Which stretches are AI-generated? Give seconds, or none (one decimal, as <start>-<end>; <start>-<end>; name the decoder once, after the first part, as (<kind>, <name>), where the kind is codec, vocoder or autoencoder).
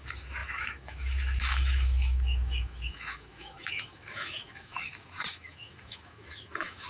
0.0-6.9 (autoencoder, DAC-VAE)